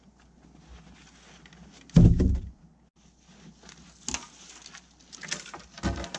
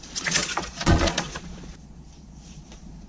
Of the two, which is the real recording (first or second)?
first